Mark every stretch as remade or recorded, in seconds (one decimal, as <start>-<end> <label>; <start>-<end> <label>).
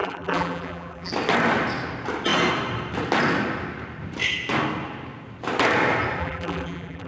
0.0-1.1 remade; 1.1-6.2 recorded; 6.2-7.1 remade